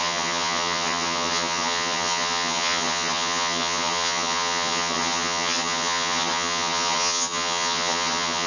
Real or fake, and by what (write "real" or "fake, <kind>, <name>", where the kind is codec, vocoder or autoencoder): fake, vocoder, HiFi-GAN